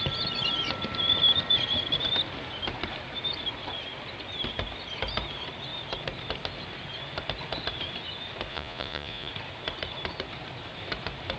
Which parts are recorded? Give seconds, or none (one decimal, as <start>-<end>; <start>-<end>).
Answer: 0.0-8.5; 9.3-11.4